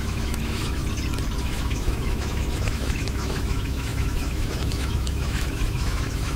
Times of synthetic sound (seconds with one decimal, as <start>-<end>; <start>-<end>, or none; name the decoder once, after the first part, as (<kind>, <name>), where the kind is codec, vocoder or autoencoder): 0.0-0.8 (autoencoder, DAC-VAE); 1.4-6.4